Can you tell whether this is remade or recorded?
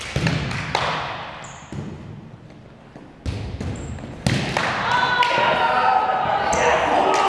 recorded